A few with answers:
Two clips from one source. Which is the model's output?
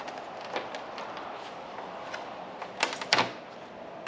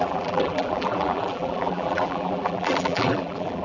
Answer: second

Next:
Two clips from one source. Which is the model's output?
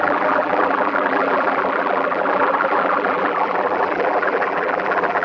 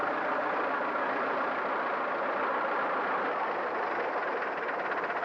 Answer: first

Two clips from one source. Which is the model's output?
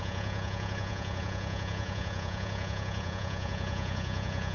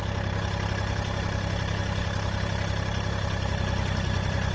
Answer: first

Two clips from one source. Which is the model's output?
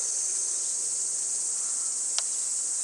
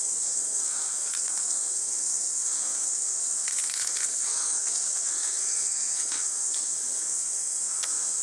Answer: second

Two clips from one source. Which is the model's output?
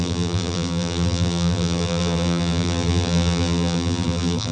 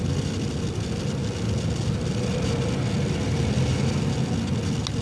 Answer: first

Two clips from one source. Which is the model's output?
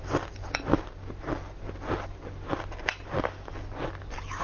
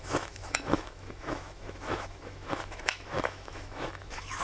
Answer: second